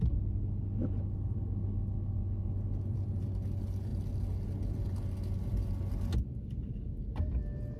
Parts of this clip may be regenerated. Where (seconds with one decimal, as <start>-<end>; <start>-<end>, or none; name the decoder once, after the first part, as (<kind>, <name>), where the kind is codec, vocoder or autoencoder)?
none